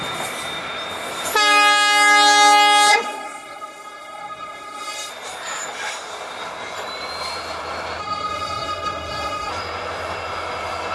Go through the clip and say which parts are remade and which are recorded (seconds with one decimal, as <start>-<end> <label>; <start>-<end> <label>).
0.0-2.9 recorded; 2.9-5.1 remade; 5.1-8.0 recorded; 8.0-9.5 remade; 9.5-10.9 recorded